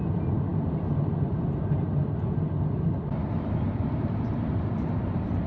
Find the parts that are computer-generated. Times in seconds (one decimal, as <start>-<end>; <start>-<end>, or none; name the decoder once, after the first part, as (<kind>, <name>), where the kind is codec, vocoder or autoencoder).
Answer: none